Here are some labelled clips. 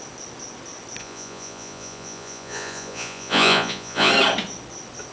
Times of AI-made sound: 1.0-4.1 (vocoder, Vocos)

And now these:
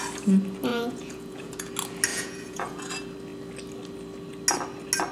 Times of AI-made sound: 0.7-1.7 (vocoder, Vocos); 2.1-2.8

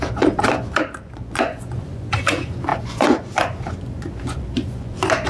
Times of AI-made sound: 0.0-5.3 (vocoder, Vocos)

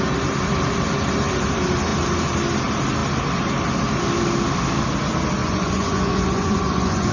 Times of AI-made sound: 5.4-7.1 (vocoder, Vocos)

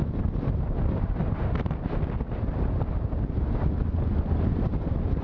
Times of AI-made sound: none

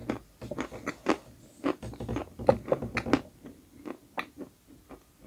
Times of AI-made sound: none